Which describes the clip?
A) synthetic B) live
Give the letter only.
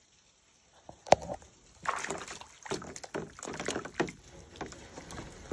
B